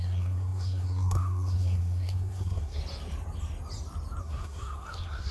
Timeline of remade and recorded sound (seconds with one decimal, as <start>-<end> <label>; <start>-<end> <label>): 0.0-2.8 remade; 2.8-4.2 recorded; 4.2-5.3 remade